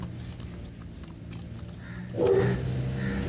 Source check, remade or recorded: recorded